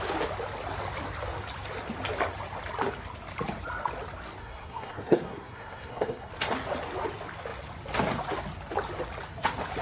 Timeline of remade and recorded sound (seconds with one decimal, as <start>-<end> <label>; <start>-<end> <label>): 0.0-4.4 recorded; 4.4-6.3 remade; 6.3-9.8 recorded